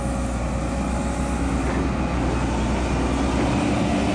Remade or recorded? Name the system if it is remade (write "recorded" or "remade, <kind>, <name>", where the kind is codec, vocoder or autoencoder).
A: recorded